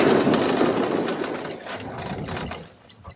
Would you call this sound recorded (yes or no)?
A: yes